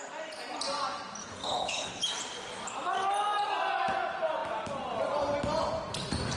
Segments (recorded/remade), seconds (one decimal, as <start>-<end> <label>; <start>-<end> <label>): 0.0-1.2 recorded; 1.2-1.9 remade; 1.9-6.4 recorded